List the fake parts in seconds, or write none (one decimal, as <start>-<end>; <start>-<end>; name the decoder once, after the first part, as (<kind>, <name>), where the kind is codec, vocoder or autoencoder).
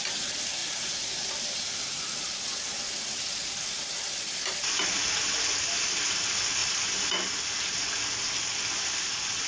none